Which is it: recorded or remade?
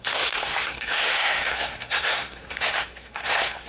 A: remade